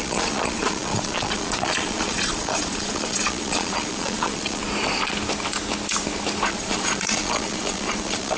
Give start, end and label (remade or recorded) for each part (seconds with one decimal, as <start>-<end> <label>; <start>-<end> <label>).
0.0-4.6 remade; 4.6-6.5 recorded; 6.5-8.4 remade